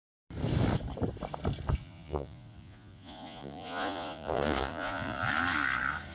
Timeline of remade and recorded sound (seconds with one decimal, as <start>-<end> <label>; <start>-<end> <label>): 0.0-1.8 recorded; 1.8-5.3 remade; 5.3-6.1 recorded